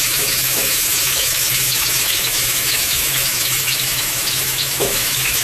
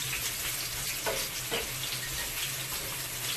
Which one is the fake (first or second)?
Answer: first